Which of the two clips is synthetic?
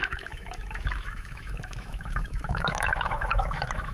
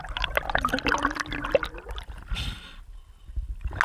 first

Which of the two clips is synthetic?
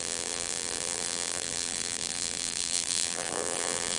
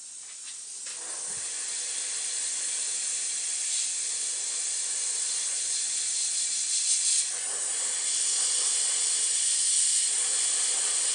first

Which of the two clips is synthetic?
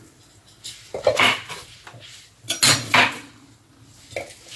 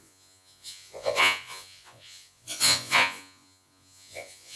second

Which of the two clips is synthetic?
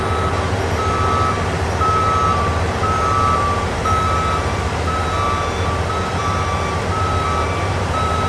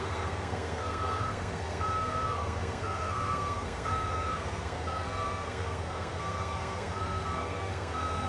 second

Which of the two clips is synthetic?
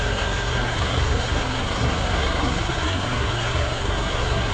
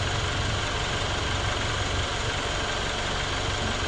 first